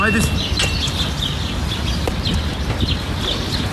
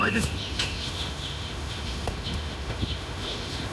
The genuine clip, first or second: first